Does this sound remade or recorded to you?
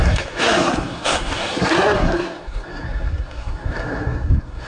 remade